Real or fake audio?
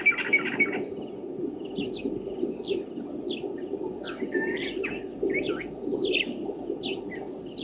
real